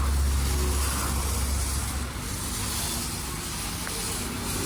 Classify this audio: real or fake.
real